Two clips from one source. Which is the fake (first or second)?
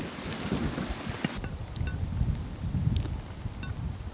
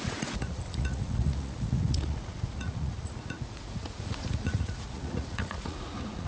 second